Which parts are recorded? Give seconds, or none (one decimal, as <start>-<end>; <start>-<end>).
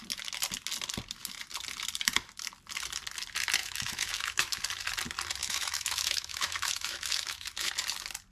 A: 0.0-3.6; 4.6-5.4; 7.7-8.3